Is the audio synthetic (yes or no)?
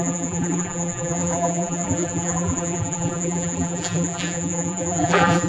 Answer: yes